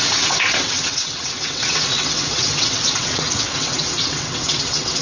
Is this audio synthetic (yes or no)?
yes